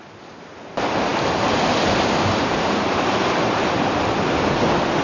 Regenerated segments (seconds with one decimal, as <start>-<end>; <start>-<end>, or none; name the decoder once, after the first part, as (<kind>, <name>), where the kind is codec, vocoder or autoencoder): 1.1-4.1 (vocoder, BigVGAN v2)